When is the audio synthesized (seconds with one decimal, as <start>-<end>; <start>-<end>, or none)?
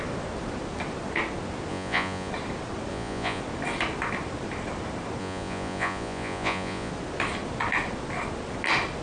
1.7-2.3; 2.9-3.4; 5.2-6.9